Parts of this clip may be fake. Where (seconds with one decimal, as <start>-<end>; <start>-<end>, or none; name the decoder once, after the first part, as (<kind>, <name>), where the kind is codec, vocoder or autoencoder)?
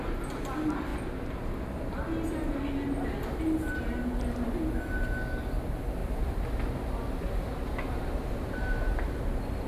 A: 6.0-9.2 (vocoder, BigVGAN v2)